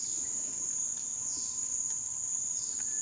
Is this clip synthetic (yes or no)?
no